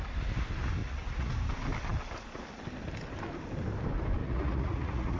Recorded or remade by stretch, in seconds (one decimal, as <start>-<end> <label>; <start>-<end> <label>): 0.0-0.8 recorded; 0.8-1.3 remade; 1.3-4.2 recorded; 4.2-5.2 remade